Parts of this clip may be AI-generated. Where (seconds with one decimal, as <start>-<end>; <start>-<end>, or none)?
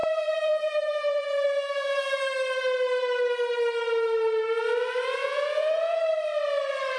0.0-2.2; 5.2-6.0